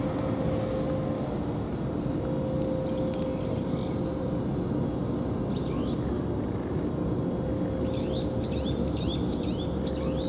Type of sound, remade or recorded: recorded